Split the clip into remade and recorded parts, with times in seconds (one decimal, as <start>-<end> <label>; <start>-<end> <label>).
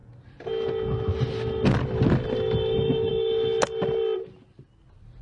0.0-5.2 recorded